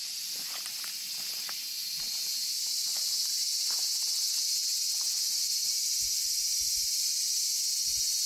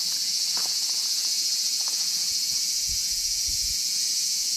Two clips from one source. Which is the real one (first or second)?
first